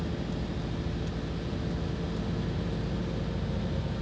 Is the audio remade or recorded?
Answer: recorded